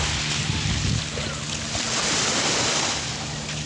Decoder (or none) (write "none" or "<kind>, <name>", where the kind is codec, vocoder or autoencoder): none